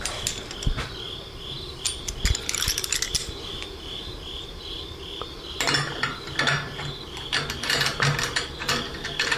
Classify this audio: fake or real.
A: real